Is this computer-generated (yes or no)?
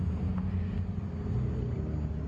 no